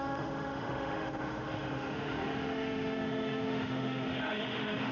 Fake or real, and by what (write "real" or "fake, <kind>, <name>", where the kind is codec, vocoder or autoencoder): fake, autoencoder, DAC-VAE